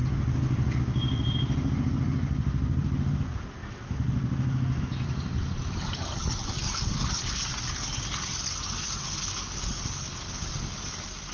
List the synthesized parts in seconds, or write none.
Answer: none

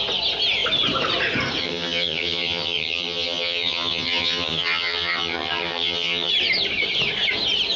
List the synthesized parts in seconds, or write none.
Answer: 1.6-6.3

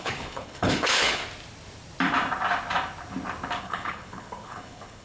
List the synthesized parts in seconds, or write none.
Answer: 0.0-1.2; 3.6-5.0

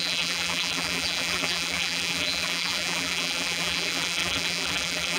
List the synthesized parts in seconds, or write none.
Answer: 0.0-5.2

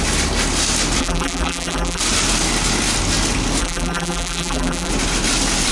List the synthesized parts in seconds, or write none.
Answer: 1.0-2.0; 3.6-4.9

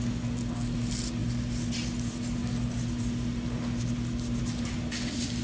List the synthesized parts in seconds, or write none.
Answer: none